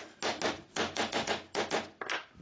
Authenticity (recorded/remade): recorded